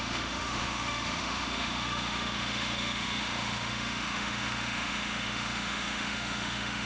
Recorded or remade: remade